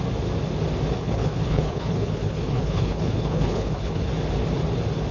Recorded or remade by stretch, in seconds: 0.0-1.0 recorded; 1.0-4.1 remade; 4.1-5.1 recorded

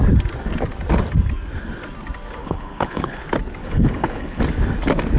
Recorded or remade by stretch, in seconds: 0.0-2.4 recorded; 2.4-3.2 remade; 3.2-3.6 recorded; 3.6-4.4 remade; 4.4-5.2 recorded

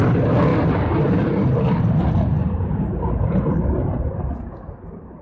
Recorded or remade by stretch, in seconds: 0.0-0.5 recorded; 0.5-1.6 remade; 1.6-2.4 recorded; 2.4-4.3 remade; 4.3-5.2 recorded

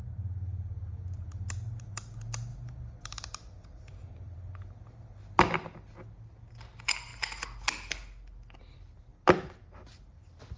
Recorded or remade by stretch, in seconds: 0.0-2.5 recorded; 2.5-4.6 remade; 4.6-9.1 recorded; 9.1-10.6 remade

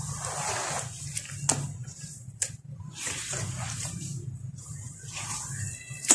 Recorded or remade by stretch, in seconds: 0.0-1.8 recorded; 1.8-4.7 remade; 4.7-6.1 recorded

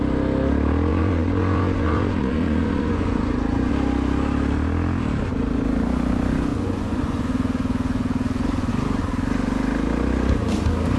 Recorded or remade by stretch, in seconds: 0.0-0.9 recorded; 0.9-3.7 remade; 3.7-6.5 recorded; 6.5-8.7 remade; 8.7-11.0 recorded

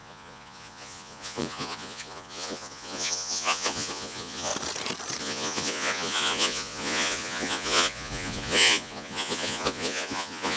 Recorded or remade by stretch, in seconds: 0.0-4.5 remade; 4.5-5.2 recorded; 5.2-10.6 remade